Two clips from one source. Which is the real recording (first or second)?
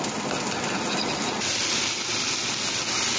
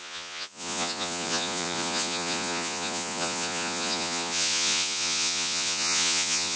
first